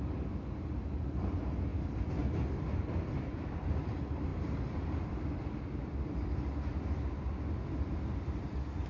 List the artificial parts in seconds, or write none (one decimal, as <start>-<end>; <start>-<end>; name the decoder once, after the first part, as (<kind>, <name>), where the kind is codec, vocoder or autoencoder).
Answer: none